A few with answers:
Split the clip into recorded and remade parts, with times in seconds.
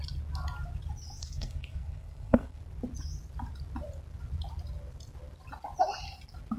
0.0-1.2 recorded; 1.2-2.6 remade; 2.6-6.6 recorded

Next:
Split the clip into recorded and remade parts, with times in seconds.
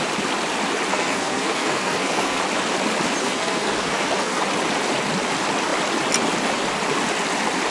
0.0-0.9 recorded; 0.9-2.4 remade; 2.4-3.2 recorded; 3.2-4.4 remade; 4.4-7.7 recorded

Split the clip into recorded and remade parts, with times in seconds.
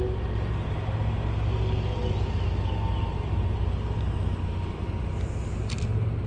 0.0-6.3 recorded